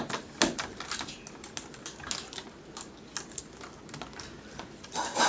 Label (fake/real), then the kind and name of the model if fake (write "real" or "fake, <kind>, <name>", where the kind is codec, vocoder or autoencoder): real